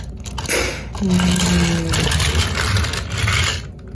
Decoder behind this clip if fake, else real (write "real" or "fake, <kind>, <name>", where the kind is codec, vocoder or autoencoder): real